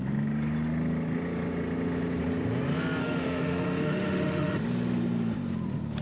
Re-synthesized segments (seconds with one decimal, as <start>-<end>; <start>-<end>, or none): 3.0-4.6